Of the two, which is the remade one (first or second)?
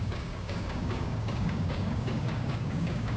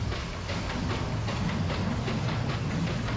first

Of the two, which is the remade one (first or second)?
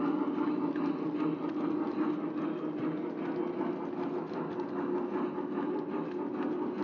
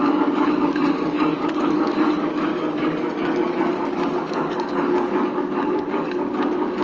second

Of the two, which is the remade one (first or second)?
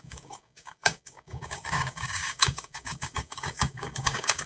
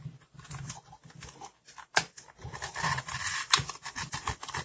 first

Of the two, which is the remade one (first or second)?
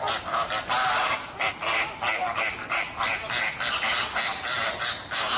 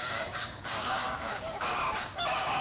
second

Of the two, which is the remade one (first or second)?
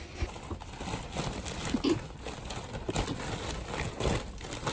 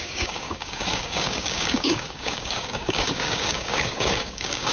second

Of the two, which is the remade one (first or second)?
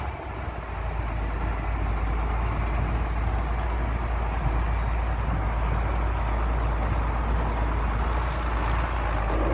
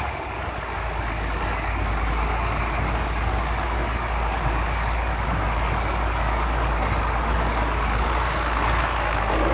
second